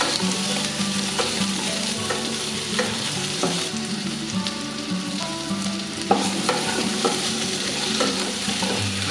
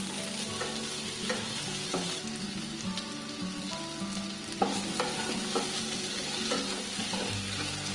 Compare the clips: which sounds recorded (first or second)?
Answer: second